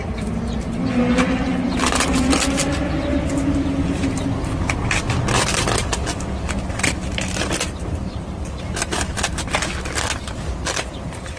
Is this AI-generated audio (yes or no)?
no